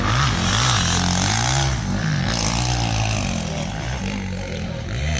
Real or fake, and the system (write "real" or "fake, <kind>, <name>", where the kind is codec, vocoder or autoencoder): real